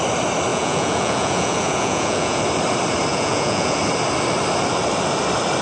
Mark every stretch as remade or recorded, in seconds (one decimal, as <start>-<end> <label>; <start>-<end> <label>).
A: 0.0-0.5 recorded; 0.5-2.4 remade; 2.4-3.1 recorded; 3.1-3.8 remade; 3.8-5.6 recorded